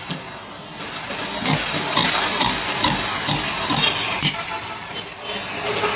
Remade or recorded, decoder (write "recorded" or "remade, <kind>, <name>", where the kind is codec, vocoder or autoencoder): recorded